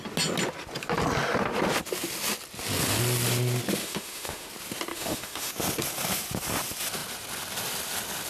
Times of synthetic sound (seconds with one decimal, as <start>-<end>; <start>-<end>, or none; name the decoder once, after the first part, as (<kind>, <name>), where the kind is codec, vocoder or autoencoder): 3.8-4.5 (autoencoder, DAC-VAE); 4.9-5.5